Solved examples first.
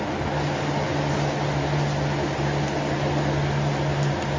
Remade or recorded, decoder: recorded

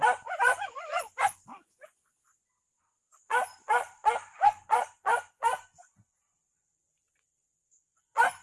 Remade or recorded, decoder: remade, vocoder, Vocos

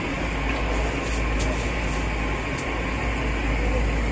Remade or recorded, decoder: recorded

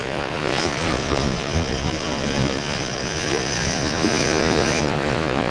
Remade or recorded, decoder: remade, vocoder, Vocos